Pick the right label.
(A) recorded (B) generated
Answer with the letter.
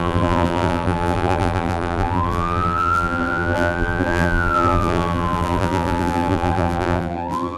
B